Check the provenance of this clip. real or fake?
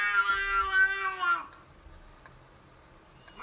real